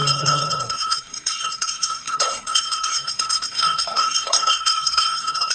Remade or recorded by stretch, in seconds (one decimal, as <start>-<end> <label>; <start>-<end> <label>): 0.0-5.5 remade